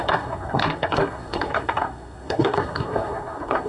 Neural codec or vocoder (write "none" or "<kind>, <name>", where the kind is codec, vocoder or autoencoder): codec, SNAC